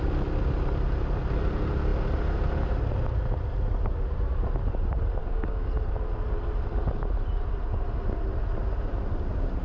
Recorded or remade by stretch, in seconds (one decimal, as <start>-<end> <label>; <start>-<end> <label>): 0.0-5.2 recorded; 5.2-5.7 remade; 5.7-9.6 recorded